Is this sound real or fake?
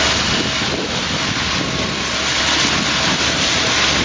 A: real